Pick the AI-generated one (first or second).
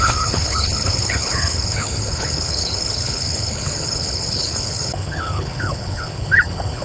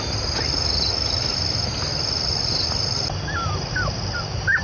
first